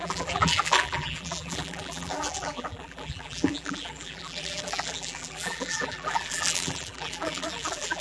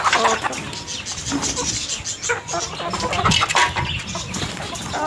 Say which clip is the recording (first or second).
second